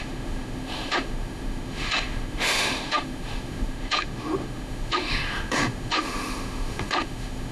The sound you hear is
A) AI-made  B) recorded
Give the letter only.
A